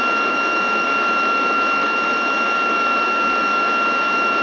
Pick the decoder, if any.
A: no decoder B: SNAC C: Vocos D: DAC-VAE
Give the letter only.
D